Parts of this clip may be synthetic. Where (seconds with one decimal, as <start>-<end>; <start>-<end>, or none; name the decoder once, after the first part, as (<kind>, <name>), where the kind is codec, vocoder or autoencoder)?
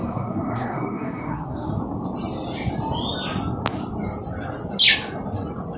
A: 0.0-1.7 (codec, SNAC)